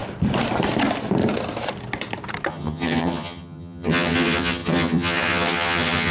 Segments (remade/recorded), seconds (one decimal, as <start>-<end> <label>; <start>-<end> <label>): 0.0-2.5 recorded; 2.5-6.1 remade